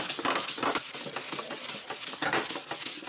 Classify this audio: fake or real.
real